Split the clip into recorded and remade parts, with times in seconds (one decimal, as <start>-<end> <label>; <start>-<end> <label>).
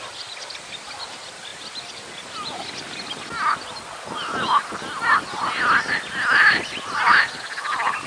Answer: 0.0-8.1 recorded